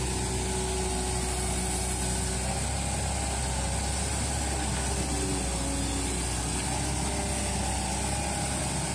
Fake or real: real